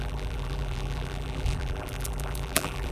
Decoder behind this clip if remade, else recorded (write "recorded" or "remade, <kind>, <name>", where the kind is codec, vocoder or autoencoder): remade, vocoder, BigVGAN v2